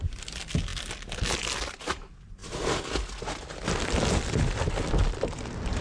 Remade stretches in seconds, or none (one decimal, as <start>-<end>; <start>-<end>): none